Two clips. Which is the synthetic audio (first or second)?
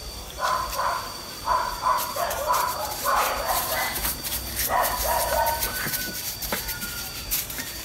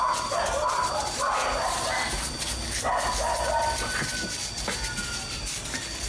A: first